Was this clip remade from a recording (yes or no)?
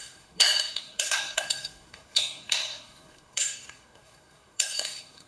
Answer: yes